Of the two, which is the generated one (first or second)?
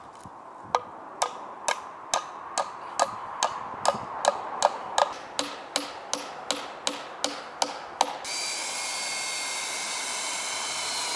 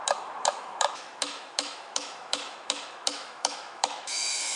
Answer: second